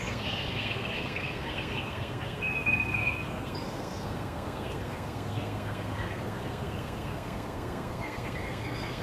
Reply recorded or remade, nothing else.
remade